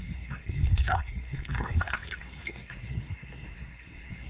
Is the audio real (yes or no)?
no